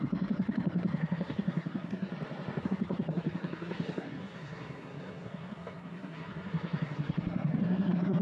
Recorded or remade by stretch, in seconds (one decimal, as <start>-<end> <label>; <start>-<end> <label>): 0.0-2.1 remade; 2.1-2.6 recorded; 2.6-8.2 remade